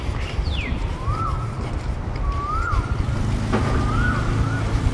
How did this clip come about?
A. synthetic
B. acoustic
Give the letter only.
B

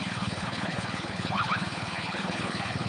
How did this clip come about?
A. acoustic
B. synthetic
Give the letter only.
B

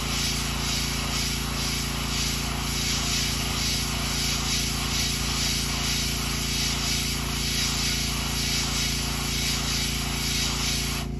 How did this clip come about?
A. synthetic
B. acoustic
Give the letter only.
B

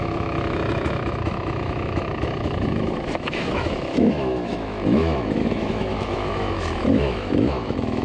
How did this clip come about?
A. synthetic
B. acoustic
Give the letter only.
A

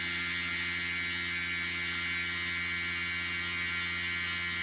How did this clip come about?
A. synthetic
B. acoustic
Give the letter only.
B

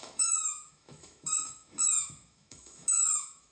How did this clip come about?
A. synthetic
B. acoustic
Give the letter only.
A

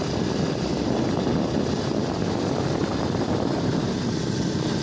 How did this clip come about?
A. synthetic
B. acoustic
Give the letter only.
B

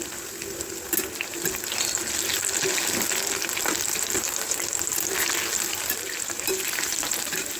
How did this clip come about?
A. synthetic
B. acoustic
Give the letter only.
B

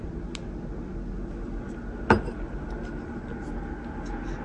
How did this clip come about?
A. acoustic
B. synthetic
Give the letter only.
A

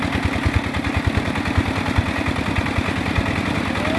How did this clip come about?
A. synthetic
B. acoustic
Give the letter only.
B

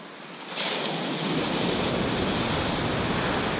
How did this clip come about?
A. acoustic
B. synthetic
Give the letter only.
A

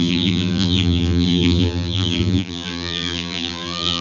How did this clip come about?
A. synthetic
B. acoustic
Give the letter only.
A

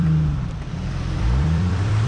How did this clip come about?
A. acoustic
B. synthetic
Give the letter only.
B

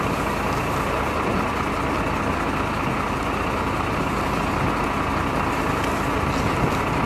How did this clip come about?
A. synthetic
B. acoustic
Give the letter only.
B